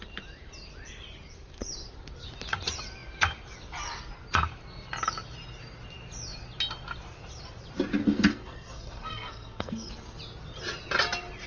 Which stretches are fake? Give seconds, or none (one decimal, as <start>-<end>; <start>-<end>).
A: 8.0-9.9